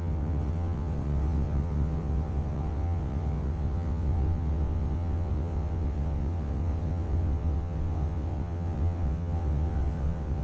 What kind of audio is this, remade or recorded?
remade